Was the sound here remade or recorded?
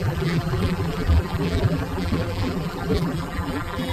remade